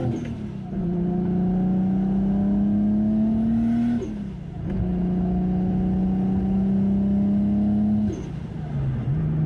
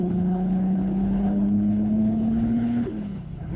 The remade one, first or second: second